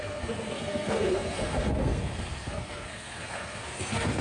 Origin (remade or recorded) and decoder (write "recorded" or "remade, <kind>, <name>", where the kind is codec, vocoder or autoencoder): remade, codec, SNAC